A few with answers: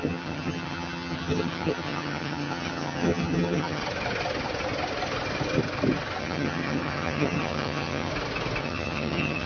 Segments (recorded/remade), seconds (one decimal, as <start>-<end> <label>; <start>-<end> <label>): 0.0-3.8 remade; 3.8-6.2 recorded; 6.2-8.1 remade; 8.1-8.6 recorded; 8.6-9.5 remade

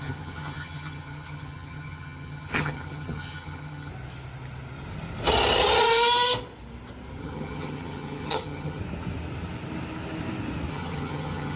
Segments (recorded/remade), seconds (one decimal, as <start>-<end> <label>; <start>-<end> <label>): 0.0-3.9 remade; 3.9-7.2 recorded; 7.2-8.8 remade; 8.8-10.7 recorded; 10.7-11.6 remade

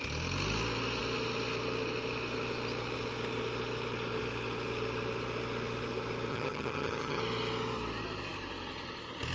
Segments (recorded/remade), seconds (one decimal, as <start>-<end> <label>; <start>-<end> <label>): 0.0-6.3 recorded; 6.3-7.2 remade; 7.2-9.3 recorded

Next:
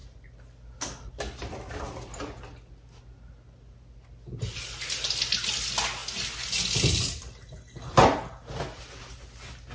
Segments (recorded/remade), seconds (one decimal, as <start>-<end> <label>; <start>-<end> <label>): 0.0-9.7 recorded

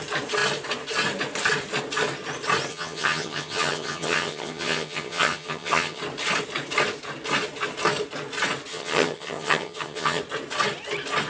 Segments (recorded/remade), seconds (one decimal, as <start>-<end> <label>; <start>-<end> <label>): 0.0-2.7 recorded; 2.7-6.0 remade; 6.0-8.7 recorded; 8.7-10.2 remade; 10.2-11.3 recorded